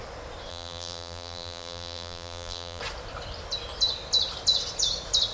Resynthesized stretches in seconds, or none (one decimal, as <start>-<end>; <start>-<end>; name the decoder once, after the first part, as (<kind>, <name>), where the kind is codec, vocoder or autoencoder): 0.5-2.8 (vocoder, BigVGAN v2)